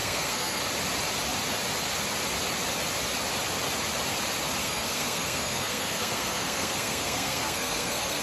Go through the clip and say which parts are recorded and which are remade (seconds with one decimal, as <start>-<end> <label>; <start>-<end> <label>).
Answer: 0.0-0.6 remade; 0.6-4.6 recorded; 4.6-8.2 remade